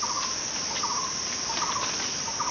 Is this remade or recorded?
recorded